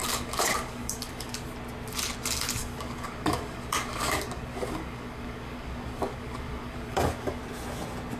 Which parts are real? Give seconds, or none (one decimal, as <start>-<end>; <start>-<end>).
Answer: 1.5-2.6; 7.4-8.2